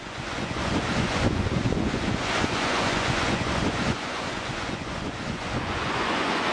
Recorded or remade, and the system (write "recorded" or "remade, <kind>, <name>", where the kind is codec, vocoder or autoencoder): remade, vocoder, Vocos